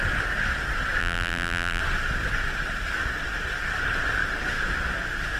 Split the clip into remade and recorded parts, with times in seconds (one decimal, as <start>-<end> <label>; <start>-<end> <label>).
0.0-1.0 recorded; 1.0-1.8 remade; 1.8-5.4 recorded